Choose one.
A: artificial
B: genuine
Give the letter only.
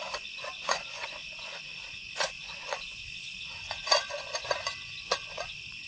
A